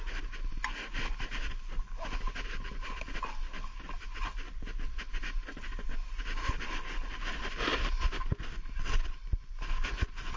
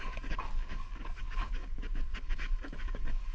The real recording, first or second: first